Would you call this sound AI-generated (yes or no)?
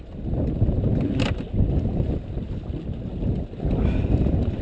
no